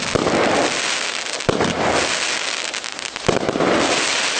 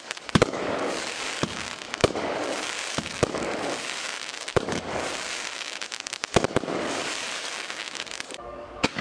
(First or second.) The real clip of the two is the first